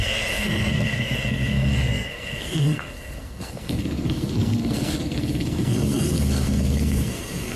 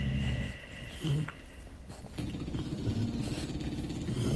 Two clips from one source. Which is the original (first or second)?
second